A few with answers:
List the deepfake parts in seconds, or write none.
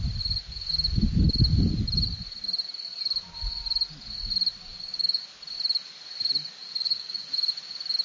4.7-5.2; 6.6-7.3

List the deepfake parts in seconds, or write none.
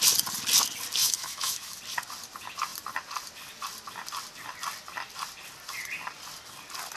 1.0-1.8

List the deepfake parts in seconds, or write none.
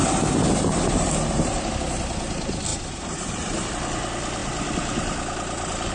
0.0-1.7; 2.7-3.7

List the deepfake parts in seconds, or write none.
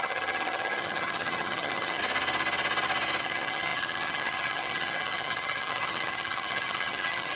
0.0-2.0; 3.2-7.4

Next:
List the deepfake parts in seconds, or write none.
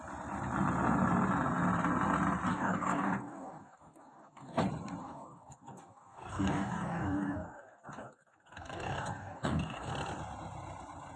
2.5-4.6; 5.0-9.9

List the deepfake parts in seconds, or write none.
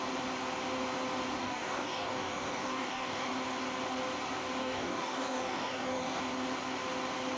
1.4-3.3; 4.6-6.2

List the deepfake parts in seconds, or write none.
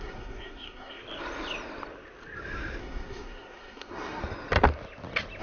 0.0-1.0; 2.8-4.2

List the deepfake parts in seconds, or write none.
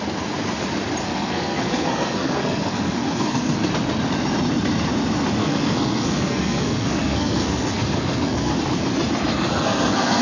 1.0-3.7; 5.4-8.5; 9.5-10.2